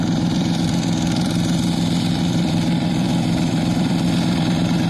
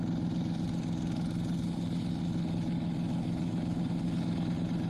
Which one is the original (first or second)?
second